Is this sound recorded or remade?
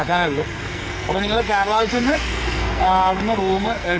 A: remade